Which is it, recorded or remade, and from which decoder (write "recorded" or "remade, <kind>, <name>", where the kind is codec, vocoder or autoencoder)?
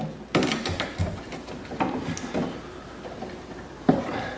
recorded